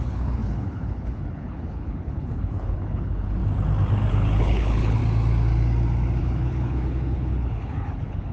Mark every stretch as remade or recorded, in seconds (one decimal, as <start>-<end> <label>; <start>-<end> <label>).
0.0-3.4 remade; 3.4-4.1 recorded; 4.1-5.0 remade; 5.0-6.2 recorded; 6.2-8.3 remade